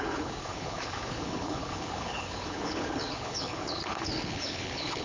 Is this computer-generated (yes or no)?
yes